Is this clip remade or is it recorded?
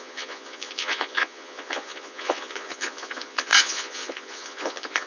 remade